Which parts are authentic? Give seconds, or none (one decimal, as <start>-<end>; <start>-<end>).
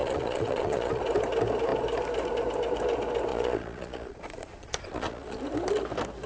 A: 1.0-3.3; 5.4-6.3